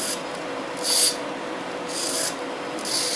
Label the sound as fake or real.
real